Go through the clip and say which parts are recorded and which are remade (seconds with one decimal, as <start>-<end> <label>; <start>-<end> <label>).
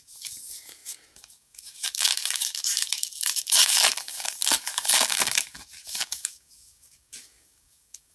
0.0-8.1 remade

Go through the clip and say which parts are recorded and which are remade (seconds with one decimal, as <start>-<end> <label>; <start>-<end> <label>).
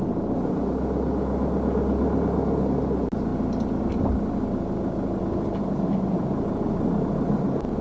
0.0-7.8 recorded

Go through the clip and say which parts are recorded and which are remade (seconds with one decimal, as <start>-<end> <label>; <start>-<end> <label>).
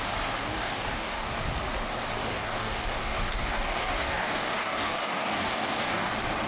0.0-0.4 recorded; 0.4-1.3 remade; 1.3-2.2 recorded; 2.2-6.1 remade; 6.1-6.5 recorded